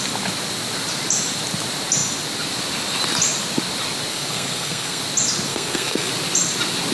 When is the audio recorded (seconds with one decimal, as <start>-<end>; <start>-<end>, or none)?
0.0-4.1; 5.0-5.5; 6.1-6.9